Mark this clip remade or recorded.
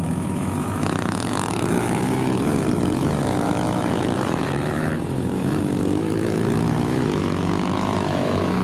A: remade